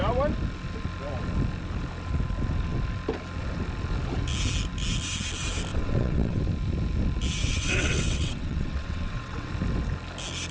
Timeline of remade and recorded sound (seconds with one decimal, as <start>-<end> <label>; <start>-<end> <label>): 0.0-5.7 recorded; 5.7-6.4 remade; 6.4-7.4 recorded; 7.4-9.5 remade; 9.5-10.5 recorded